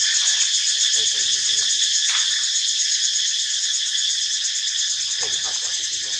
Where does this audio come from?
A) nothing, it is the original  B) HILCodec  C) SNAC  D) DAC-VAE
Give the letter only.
A